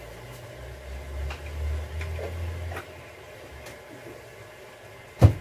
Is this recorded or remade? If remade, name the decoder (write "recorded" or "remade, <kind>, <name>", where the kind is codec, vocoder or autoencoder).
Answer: recorded